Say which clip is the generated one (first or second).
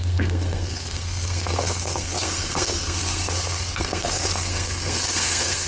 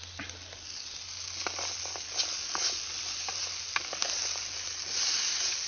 first